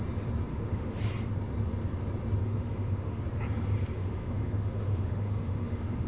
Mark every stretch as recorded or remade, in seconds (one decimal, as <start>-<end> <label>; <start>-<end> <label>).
0.0-0.5 recorded; 0.5-1.1 remade; 1.1-2.4 recorded; 2.4-3.2 remade; 3.2-4.0 recorded; 4.0-6.1 remade